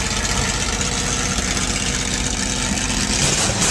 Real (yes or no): yes